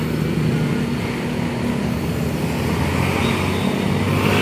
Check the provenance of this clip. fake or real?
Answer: real